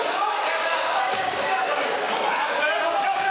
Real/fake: fake